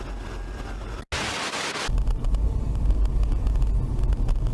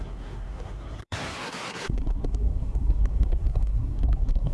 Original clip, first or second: first